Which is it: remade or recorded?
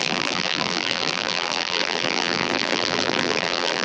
remade